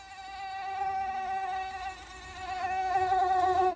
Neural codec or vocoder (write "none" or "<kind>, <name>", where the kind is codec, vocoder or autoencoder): none